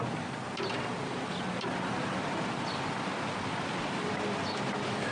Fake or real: real